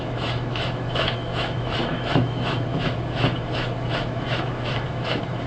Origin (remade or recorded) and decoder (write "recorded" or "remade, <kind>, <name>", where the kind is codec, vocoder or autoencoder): remade, autoencoder, DAC-VAE